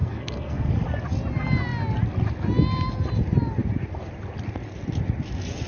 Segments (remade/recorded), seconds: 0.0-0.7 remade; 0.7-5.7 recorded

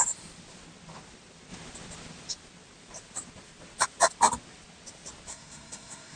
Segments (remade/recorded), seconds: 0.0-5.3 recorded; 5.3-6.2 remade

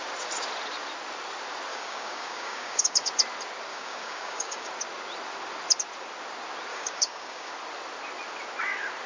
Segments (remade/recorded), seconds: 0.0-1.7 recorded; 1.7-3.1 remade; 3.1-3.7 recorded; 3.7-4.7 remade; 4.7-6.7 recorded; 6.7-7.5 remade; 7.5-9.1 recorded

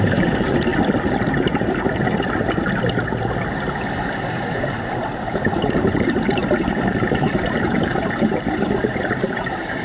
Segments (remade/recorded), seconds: 0.0-0.7 remade; 0.7-4.2 recorded; 4.2-6.4 remade; 6.4-7.0 recorded; 7.0-9.8 remade